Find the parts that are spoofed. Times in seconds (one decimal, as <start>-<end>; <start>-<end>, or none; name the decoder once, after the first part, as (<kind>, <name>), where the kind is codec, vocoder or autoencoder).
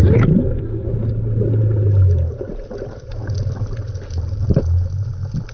0.4-0.9 (codec, SNAC)